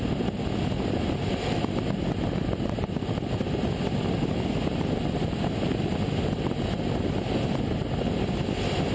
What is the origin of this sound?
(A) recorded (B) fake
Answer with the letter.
A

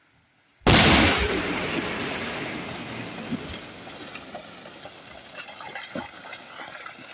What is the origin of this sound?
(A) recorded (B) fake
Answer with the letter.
A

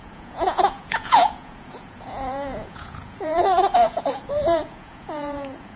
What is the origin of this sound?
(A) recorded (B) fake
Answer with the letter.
B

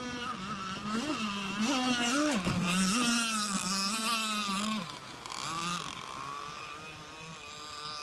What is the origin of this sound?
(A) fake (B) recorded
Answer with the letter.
B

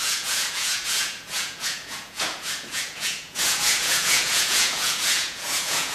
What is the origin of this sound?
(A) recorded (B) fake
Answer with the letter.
B